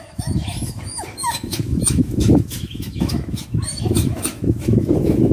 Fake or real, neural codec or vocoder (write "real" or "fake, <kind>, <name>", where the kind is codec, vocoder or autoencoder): fake, autoencoder, DAC-VAE